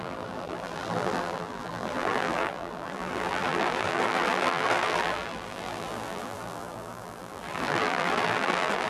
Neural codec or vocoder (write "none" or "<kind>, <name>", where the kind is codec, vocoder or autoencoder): vocoder, BigVGAN v2